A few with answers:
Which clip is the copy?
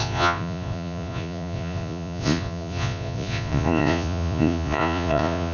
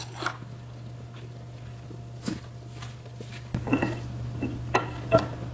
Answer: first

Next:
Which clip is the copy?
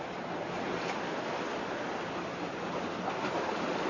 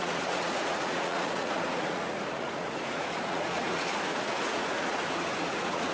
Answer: second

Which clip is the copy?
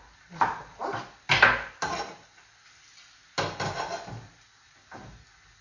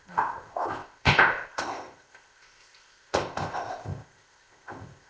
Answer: second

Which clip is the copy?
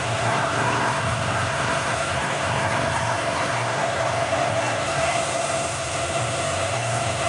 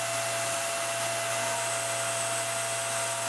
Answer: first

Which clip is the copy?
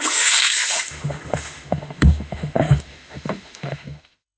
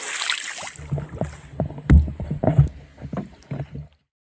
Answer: first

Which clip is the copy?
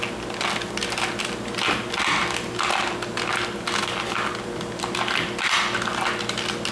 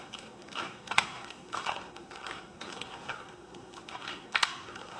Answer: second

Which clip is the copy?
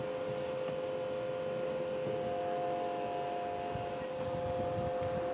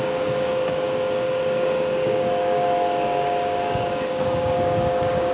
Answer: second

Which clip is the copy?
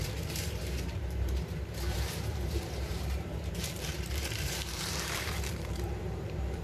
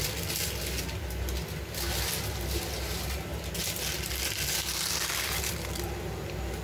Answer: first